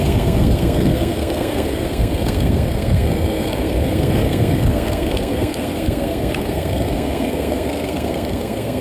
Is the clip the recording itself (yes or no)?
no